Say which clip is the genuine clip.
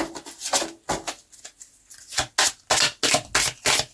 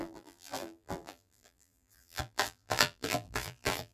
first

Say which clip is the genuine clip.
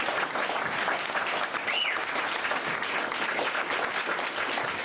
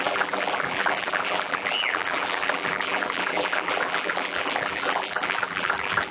first